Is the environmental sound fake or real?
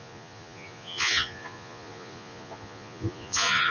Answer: fake